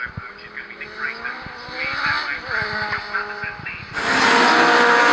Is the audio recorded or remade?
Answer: recorded